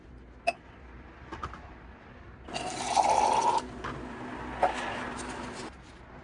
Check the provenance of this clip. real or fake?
real